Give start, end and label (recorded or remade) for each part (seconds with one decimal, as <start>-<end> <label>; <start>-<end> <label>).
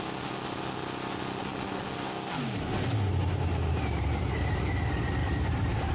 0.0-5.2 recorded; 5.2-5.9 remade